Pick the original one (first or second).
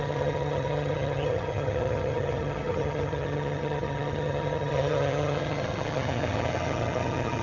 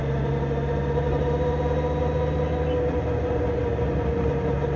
second